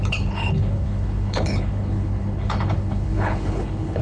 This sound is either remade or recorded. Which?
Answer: remade